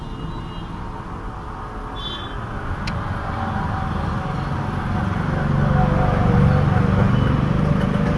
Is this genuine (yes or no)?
yes